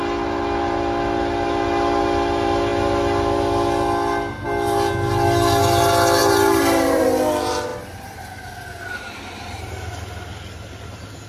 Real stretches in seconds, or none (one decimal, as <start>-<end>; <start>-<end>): 0.0-6.2; 7.0-11.3